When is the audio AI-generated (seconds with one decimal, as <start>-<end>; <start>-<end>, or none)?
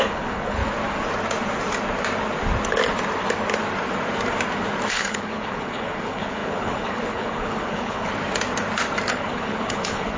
0.0-0.6; 4.9-8.1; 9.1-10.2